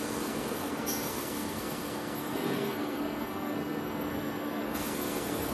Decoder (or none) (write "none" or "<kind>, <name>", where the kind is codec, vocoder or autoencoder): codec, SNAC